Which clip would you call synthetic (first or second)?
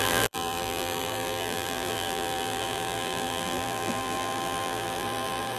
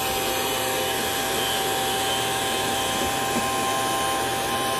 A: first